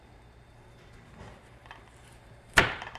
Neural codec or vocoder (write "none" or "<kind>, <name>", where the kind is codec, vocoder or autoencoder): vocoder, BigVGAN v2